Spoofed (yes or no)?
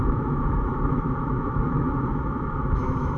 yes